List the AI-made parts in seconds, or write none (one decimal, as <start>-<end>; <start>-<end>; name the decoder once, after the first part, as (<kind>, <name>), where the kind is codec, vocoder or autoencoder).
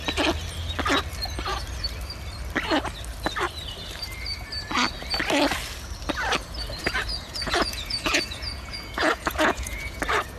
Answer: 6.8-10.0 (vocoder, Vocos)